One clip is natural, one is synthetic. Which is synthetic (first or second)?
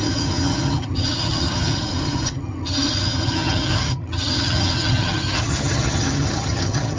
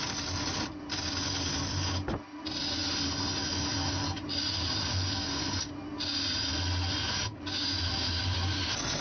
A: first